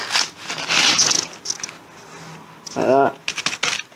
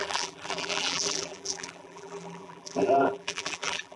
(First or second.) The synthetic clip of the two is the second